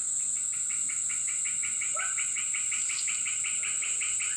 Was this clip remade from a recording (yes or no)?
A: no